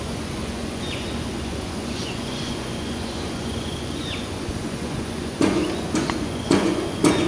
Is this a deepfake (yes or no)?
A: yes